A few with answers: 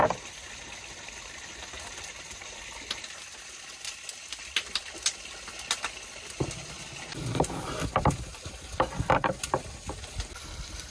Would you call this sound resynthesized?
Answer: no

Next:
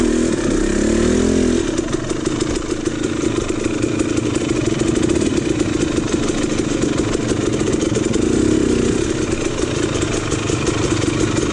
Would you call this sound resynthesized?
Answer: no